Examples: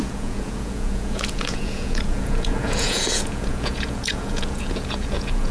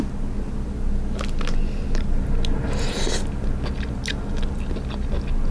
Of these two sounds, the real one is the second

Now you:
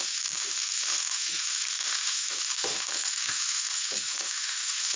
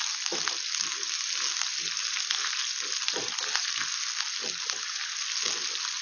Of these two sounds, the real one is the second